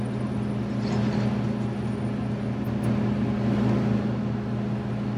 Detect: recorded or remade recorded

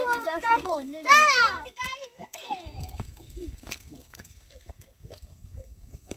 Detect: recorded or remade remade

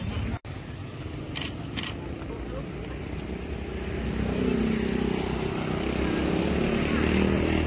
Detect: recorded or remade recorded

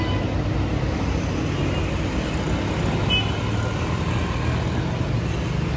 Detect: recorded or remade recorded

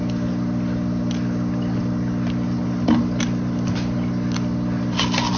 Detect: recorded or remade recorded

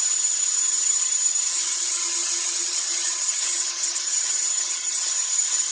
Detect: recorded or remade remade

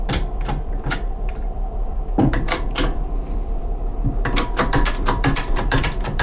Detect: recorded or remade remade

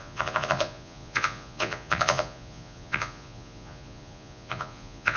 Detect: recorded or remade remade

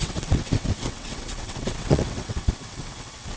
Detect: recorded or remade remade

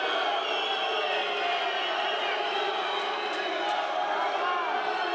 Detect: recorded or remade recorded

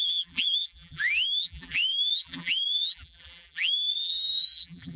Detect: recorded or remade remade